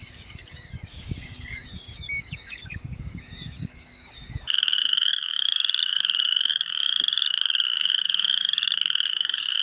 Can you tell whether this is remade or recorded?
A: remade